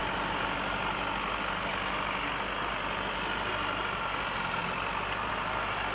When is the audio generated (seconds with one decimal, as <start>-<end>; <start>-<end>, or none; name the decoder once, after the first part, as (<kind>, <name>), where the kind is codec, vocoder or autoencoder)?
none

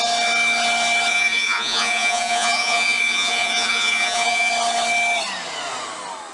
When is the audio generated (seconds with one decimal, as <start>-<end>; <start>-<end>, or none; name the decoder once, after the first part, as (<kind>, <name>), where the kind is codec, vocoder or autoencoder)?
1.1-4.5 (vocoder, Vocos)

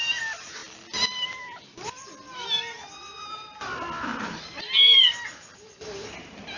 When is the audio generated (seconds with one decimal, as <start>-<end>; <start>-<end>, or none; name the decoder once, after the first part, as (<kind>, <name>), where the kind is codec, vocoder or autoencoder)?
none